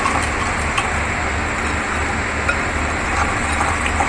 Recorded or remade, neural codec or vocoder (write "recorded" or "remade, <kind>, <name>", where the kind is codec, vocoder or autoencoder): recorded